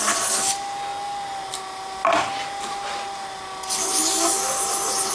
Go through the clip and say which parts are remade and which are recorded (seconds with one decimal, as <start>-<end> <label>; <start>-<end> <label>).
0.0-5.1 recorded